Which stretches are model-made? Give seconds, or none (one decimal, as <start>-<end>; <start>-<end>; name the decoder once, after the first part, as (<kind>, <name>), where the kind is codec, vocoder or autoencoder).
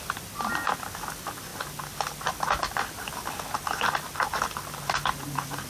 none